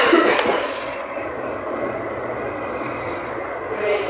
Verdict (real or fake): fake